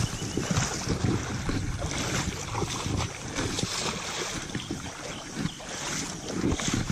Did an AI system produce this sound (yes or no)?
no